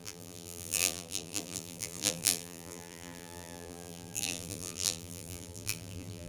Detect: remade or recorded remade